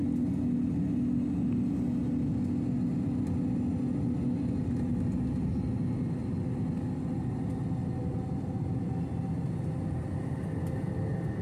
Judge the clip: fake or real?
real